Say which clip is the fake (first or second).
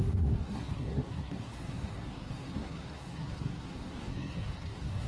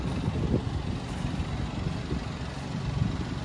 first